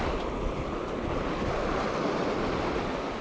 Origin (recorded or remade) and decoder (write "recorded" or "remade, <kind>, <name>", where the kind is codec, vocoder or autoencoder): recorded